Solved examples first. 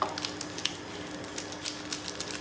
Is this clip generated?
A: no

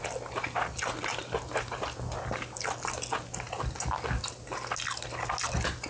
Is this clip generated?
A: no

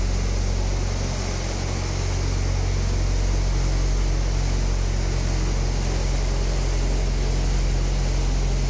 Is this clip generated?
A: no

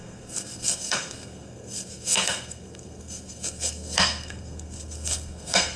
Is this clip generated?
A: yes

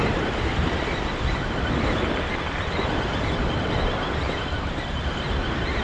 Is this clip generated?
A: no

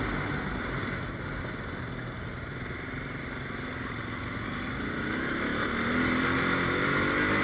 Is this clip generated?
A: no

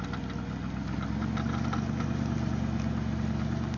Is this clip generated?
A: no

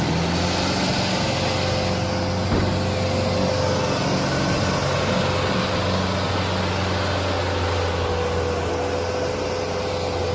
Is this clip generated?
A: no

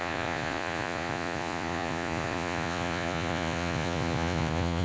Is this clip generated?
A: yes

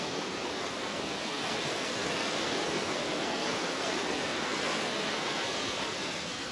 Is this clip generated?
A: yes